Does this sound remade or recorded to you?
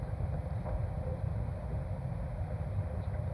recorded